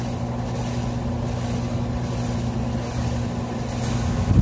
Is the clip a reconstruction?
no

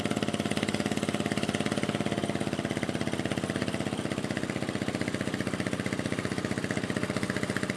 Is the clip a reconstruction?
no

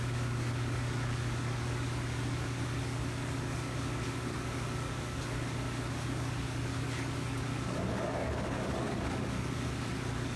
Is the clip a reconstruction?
yes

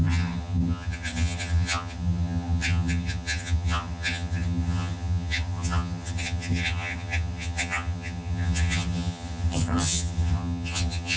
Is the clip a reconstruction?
yes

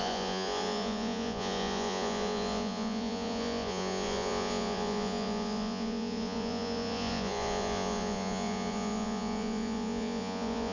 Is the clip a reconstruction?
yes